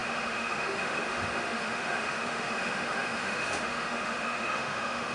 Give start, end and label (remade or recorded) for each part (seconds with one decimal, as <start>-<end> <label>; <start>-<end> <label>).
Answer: 0.0-5.1 remade